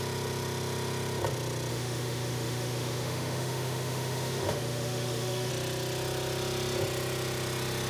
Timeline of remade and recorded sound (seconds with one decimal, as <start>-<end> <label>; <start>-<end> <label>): 0.0-1.7 recorded; 1.7-5.5 remade; 5.5-7.9 recorded